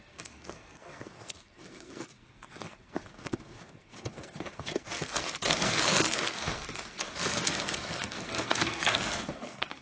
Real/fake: fake